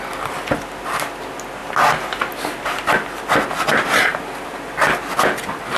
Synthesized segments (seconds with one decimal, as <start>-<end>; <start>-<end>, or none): none